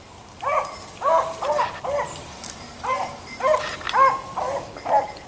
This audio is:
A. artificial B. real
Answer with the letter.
B